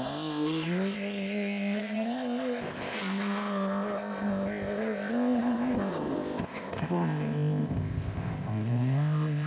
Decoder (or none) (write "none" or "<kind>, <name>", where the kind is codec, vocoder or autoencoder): codec, ZipCodec